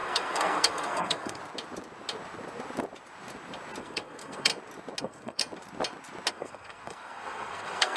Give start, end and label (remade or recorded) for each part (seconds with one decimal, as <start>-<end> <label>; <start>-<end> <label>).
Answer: 0.0-1.4 remade; 1.4-3.8 recorded; 3.8-4.5 remade; 4.5-5.0 recorded; 5.0-5.4 remade; 5.4-6.3 recorded; 6.3-8.0 remade